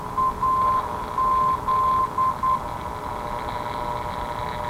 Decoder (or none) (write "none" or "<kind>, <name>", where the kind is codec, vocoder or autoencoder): none